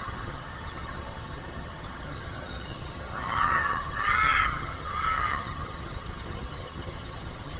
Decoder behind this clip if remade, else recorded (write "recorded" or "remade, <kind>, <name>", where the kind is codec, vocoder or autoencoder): remade, vocoder, HiFi-GAN